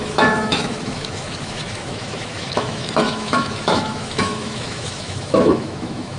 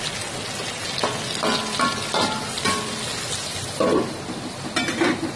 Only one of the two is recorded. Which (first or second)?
second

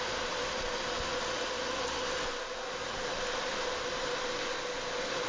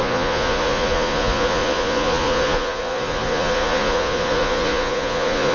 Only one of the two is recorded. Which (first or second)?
first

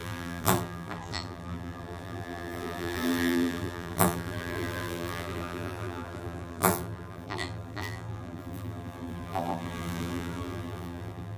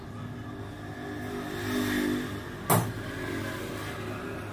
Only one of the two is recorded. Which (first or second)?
second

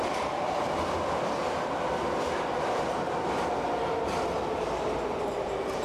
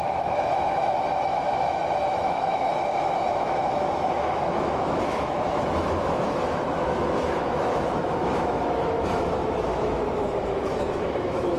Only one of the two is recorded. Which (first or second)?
first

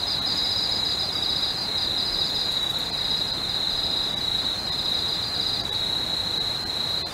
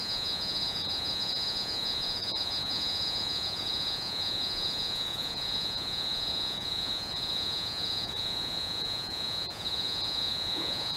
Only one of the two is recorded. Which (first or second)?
first